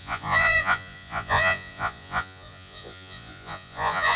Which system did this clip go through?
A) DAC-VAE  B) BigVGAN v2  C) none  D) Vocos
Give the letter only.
D